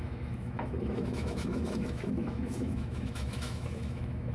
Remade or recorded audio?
remade